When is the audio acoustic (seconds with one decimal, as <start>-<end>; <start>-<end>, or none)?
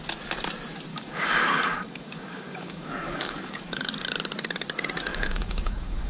0.0-0.9; 3.9-5.1